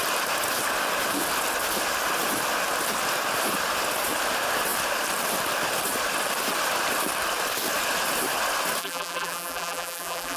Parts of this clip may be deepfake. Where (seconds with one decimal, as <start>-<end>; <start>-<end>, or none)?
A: 8.8-10.4